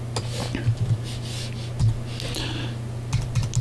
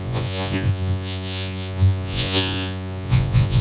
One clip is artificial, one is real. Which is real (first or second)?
first